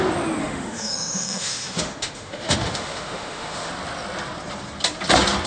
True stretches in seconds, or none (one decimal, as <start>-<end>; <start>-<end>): 0.0-0.4; 3.7-5.5